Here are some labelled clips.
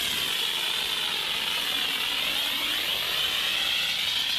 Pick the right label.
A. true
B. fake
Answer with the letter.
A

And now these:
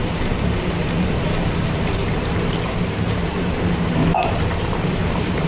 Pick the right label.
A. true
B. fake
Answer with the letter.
B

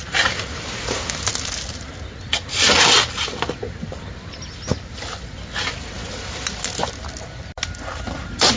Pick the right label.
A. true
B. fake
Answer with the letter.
A